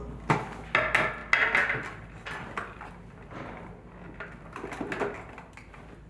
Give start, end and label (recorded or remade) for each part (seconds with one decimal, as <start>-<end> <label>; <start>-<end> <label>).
0.0-6.1 recorded

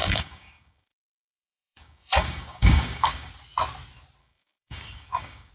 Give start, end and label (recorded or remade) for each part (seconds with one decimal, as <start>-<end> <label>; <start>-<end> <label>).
0.0-3.3 remade; 3.3-4.2 recorded; 4.2-5.5 remade

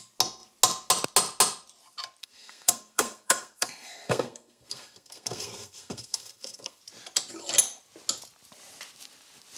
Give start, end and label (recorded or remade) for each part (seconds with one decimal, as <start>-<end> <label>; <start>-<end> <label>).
0.0-2.2 recorded; 2.2-6.8 remade; 6.8-9.6 recorded

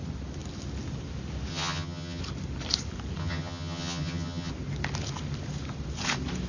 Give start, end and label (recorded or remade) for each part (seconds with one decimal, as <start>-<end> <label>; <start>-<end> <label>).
0.0-1.5 recorded; 1.5-2.2 remade; 2.2-3.2 recorded; 3.2-4.5 remade; 4.5-6.5 recorded

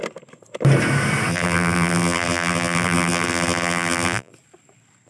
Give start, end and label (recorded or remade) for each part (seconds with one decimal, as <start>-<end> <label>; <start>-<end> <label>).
0.0-1.3 recorded; 1.3-4.3 remade; 4.3-5.1 recorded

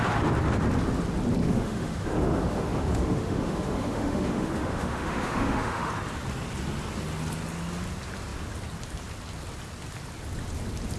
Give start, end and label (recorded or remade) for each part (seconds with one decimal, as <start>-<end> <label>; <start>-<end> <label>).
0.0-1.4 recorded; 1.4-5.9 remade; 5.9-11.0 recorded

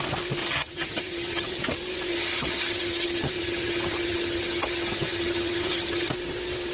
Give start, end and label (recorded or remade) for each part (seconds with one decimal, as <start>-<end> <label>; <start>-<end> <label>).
0.0-0.4 recorded; 0.4-1.6 remade; 1.6-2.1 recorded; 2.1-6.1 remade; 6.1-6.7 recorded